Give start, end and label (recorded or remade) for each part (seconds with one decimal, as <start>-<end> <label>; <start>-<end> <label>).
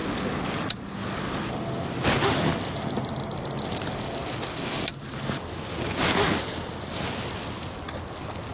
0.0-8.5 recorded